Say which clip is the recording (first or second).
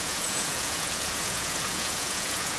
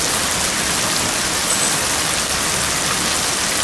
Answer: second